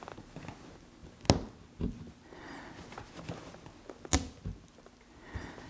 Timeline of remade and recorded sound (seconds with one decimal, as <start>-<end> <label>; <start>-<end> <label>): 0.0-5.7 recorded